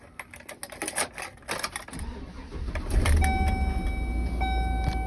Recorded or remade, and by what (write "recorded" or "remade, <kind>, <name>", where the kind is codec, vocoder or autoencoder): recorded